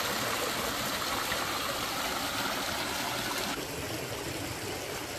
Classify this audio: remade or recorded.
recorded